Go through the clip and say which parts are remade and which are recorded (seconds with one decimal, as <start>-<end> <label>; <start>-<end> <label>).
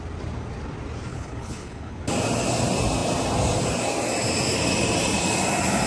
0.0-1.1 recorded; 1.1-2.0 remade; 2.0-5.9 recorded